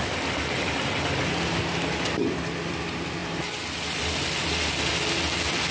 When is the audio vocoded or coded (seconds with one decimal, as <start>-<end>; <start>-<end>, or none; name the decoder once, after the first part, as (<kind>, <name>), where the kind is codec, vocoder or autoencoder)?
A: none